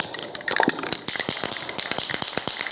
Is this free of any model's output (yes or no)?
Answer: no